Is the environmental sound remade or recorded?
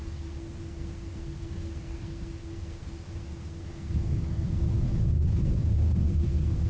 remade